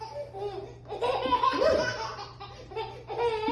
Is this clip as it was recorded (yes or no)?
yes